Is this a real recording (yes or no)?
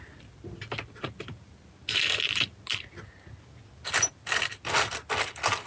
yes